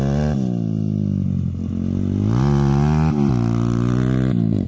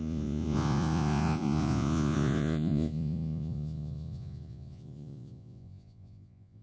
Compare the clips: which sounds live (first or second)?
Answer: first